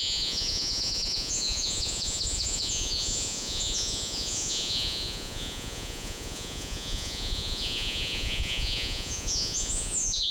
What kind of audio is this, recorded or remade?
remade